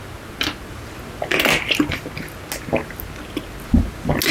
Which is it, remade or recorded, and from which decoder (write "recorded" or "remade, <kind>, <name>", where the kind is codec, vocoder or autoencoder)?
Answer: recorded